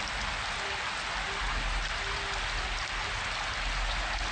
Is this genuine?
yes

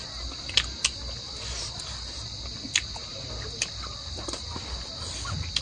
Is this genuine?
yes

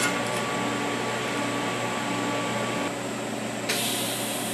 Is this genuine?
yes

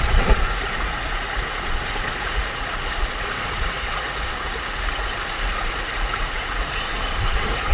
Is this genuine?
no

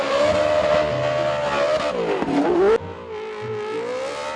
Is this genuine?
yes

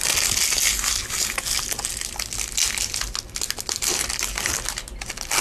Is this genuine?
yes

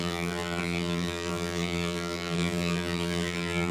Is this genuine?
no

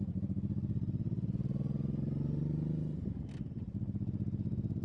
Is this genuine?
yes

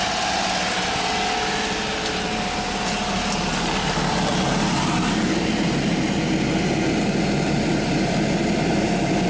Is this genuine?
yes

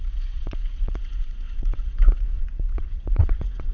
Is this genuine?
no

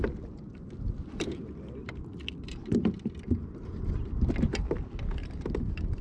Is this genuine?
yes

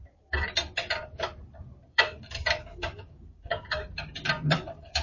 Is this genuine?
no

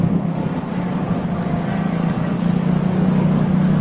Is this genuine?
no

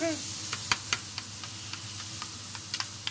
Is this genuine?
yes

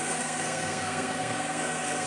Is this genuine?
no